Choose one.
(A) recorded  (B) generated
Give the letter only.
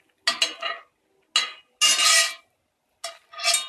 A